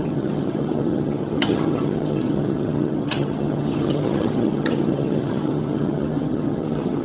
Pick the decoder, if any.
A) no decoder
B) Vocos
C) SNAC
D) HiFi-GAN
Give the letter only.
D